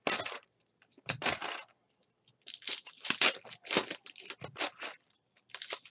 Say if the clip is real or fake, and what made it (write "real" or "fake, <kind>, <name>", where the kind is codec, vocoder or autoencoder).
fake, vocoder, BigVGAN v2